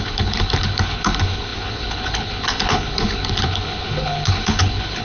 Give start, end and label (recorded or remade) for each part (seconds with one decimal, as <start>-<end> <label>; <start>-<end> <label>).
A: 0.0-5.0 remade